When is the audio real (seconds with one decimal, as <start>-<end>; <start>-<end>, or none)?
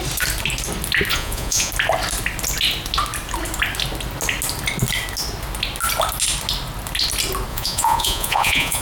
0.0-1.1; 1.7-7.5